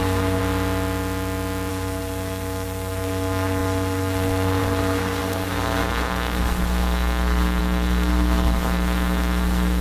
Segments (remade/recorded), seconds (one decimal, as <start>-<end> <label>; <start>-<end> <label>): 0.0-0.4 remade; 0.4-1.7 recorded; 1.7-9.8 remade